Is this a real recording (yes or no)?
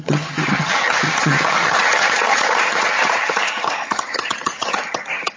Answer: no